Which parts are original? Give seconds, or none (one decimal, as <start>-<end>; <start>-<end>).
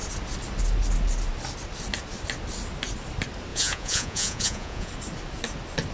0.0-3.5; 4.9-5.9